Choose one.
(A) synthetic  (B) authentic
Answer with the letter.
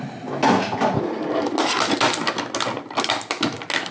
B